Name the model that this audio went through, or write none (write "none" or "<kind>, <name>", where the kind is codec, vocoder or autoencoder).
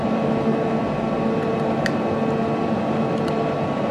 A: none